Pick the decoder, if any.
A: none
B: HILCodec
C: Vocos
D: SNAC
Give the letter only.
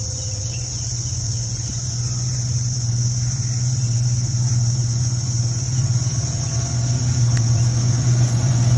C